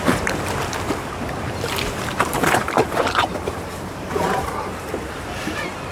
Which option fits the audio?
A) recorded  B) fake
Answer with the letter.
B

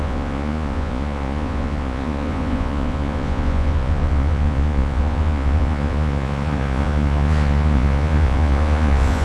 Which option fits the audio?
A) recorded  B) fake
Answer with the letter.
B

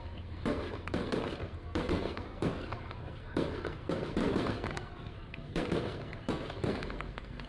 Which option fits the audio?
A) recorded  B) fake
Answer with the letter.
B